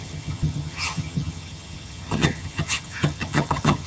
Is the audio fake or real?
fake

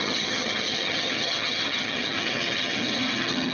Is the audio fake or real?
fake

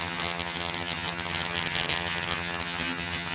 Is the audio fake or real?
fake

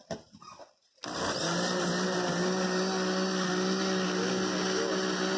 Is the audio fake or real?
real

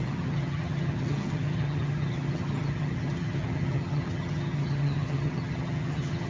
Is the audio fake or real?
fake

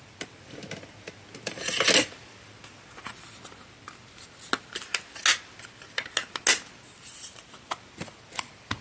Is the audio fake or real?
real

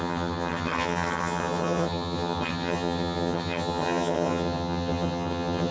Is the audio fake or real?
fake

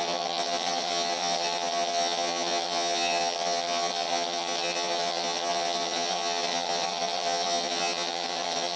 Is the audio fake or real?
fake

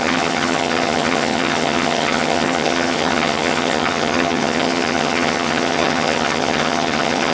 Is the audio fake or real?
fake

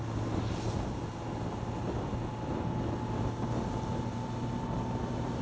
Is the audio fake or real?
real